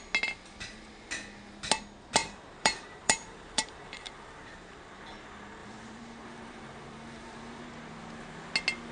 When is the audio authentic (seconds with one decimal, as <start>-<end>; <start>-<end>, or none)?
0.0-2.2; 5.0-5.6; 7.6-8.9